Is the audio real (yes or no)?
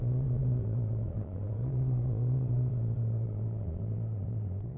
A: no